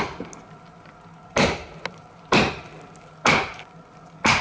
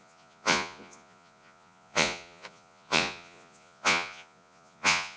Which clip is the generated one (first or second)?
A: second